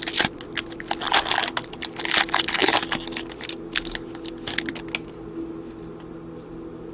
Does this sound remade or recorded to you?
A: recorded